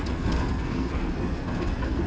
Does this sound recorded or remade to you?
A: remade